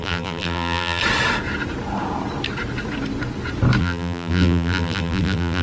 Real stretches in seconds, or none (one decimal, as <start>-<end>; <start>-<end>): 1.0-3.8

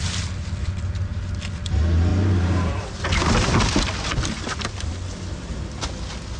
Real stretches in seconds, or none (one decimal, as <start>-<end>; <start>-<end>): 0.0-6.4